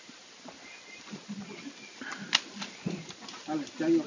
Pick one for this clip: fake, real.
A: real